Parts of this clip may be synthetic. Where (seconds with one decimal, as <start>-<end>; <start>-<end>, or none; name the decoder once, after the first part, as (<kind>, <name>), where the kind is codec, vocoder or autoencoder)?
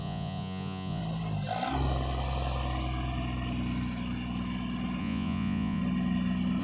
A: 0.0-1.0 (vocoder, Vocos); 5.0-5.8